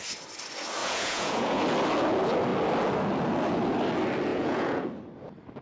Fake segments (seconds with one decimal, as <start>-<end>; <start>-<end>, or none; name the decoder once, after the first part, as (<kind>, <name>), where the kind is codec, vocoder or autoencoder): 0.8-1.6 (vocoder, Vocos); 4.3-4.9